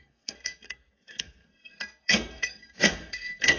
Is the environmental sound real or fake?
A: fake